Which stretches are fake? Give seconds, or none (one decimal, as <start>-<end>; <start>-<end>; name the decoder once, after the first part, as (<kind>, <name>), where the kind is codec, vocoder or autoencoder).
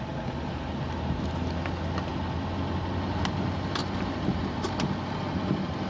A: none